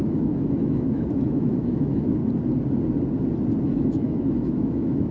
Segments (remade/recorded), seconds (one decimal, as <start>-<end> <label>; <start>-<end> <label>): 0.0-2.2 remade; 2.2-3.6 recorded; 3.6-5.1 remade